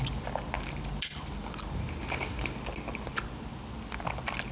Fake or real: real